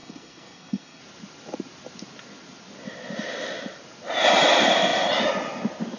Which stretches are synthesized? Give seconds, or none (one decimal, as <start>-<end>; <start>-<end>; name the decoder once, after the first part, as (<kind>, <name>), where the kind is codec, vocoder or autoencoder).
0.0-1.0 (codec, SNAC)